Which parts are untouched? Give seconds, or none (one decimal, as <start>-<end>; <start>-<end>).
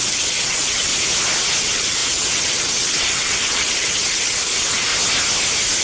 0.9-1.6; 4.9-5.8